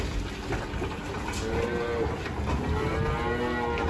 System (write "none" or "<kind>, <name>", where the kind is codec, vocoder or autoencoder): none